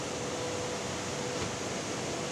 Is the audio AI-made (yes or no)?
no